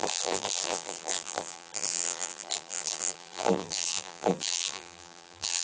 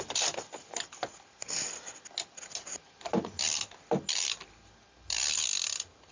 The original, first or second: second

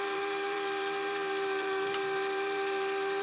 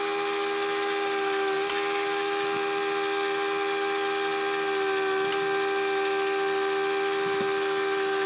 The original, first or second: second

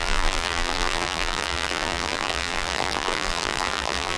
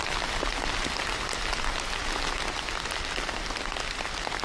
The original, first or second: second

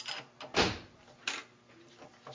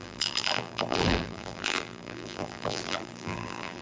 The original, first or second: first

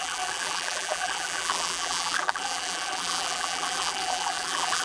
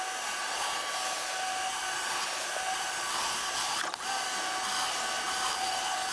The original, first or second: second